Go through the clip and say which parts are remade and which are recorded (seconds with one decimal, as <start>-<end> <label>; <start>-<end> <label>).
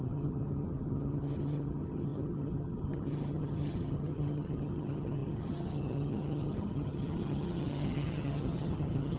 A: 0.0-9.2 remade